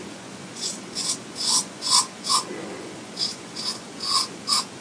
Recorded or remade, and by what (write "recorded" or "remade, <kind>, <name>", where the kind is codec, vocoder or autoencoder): remade, vocoder, Vocos